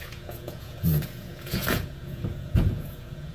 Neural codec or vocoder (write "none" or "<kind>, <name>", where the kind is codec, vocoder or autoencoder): vocoder, Vocos